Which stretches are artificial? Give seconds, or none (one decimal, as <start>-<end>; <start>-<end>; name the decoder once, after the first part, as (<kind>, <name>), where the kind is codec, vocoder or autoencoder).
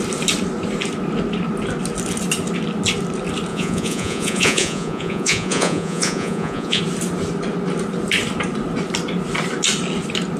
3.5-6.8 (vocoder, Vocos)